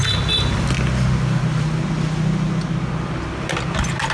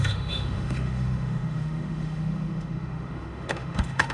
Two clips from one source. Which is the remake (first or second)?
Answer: second